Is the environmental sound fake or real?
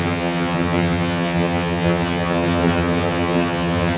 fake